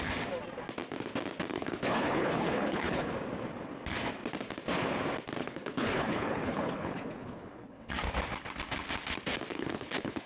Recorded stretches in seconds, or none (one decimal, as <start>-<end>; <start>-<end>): 0.0-1.5; 3.1-5.4; 7.9-9.5